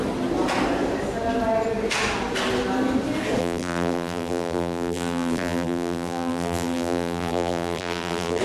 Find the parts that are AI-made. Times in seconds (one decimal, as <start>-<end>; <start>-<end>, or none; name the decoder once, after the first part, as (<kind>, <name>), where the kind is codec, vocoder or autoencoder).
3.4-8.4 (vocoder, BigVGAN v2)